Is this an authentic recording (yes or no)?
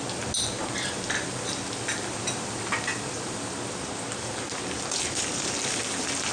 yes